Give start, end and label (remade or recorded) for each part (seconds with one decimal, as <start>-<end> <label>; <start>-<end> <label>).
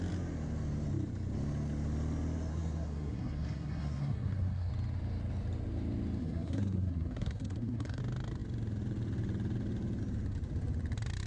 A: 0.0-2.5 recorded; 2.5-4.7 remade; 4.7-6.2 recorded; 6.2-8.0 remade; 8.0-11.3 recorded